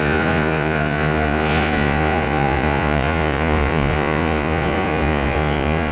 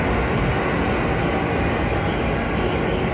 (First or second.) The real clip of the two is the second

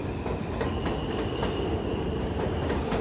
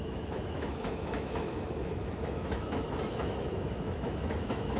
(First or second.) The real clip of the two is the first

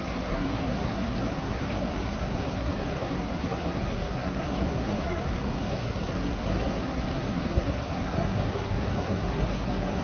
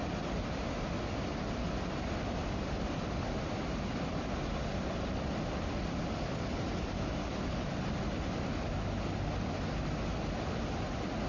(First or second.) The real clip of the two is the second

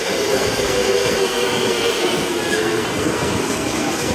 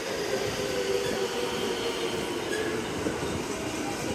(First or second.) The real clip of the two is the second